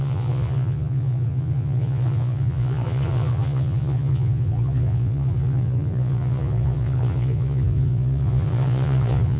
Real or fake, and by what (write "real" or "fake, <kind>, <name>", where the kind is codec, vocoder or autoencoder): fake, vocoder, Vocos